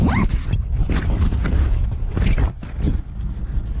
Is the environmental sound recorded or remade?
recorded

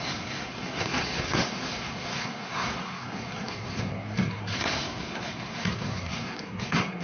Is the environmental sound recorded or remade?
remade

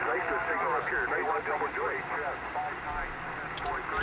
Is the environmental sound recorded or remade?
recorded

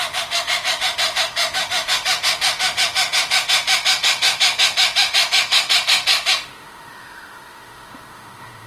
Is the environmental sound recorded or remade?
remade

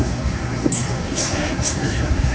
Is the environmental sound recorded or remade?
remade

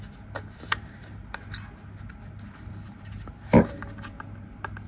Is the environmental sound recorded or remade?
recorded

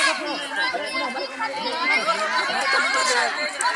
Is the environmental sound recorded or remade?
recorded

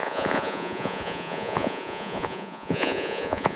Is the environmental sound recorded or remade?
remade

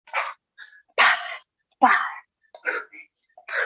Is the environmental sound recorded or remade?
recorded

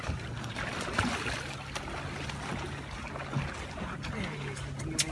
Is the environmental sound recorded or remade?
recorded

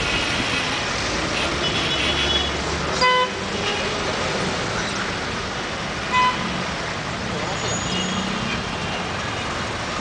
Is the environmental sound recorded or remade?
recorded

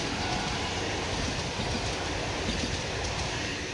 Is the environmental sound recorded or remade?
recorded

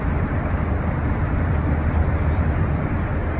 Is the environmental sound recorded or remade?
recorded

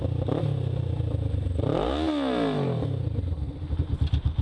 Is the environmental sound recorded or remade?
recorded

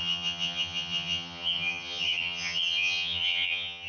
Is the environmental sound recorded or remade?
remade